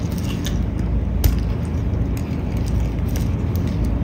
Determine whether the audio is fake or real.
real